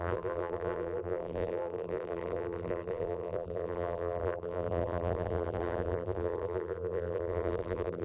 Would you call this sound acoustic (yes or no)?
no